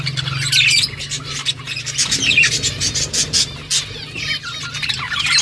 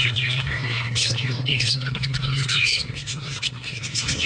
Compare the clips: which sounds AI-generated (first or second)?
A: second